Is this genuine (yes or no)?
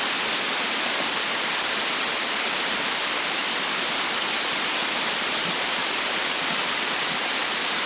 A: yes